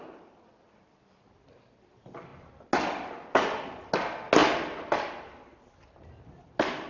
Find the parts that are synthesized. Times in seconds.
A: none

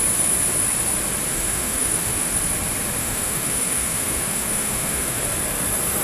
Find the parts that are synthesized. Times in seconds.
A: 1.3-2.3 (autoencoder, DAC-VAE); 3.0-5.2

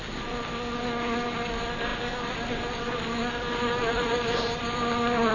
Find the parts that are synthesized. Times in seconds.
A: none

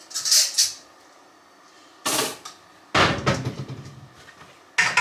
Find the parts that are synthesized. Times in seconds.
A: none